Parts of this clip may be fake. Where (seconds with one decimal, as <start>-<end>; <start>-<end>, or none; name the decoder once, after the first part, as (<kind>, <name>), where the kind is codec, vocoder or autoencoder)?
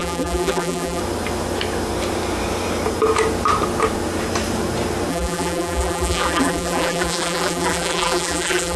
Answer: 0.0-1.0 (vocoder, BigVGAN v2); 5.1-8.8